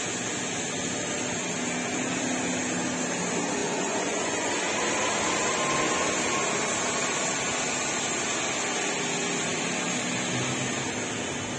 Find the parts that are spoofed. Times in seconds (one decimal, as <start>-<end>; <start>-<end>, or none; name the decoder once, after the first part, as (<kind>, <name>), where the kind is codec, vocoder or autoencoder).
3.6-4.5 (vocoder, Vocos)